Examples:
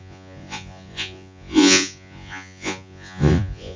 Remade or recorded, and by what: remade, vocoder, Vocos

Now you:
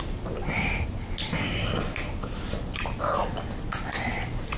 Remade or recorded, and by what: recorded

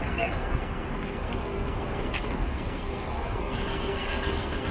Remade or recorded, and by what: remade, codec, SNAC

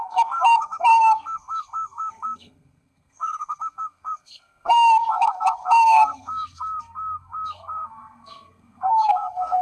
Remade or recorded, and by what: remade, codec, SNAC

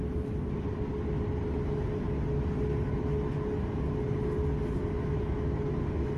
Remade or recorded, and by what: recorded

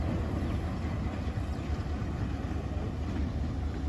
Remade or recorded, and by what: recorded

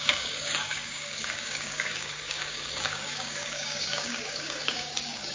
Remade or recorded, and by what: remade, codec, DAC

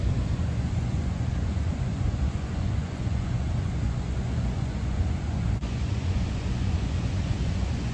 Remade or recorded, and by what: remade, vocoder, Vocos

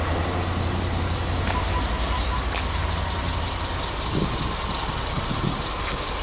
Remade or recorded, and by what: recorded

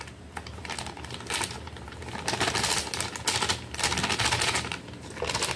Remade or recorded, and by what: recorded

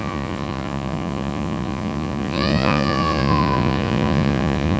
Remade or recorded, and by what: remade, vocoder, Vocos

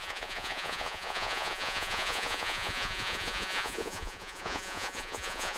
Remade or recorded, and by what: remade, vocoder, Vocos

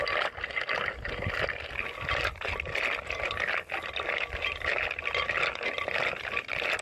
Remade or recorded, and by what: recorded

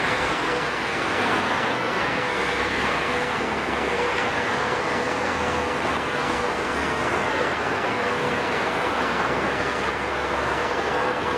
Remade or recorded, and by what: remade, codec, SNAC